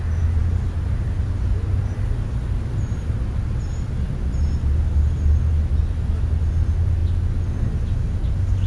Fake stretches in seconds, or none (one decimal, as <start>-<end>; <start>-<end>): none